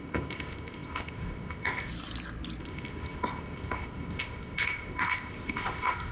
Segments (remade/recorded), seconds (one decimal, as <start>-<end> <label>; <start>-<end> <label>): 0.0-1.9 remade; 1.9-2.6 recorded; 2.6-6.1 remade